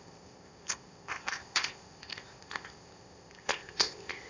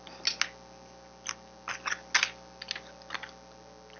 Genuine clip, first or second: second